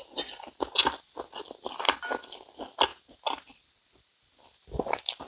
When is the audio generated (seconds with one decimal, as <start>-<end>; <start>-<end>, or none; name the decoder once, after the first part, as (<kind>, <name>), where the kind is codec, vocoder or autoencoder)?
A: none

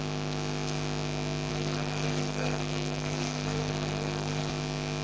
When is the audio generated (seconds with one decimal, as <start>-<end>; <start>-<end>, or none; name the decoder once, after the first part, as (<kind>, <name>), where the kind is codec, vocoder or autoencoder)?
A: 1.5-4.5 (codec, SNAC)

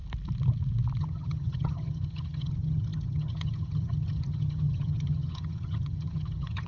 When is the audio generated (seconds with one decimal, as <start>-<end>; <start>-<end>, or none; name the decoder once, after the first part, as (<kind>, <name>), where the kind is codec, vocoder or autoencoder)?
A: 1.0-6.7 (vocoder, HiFi-GAN)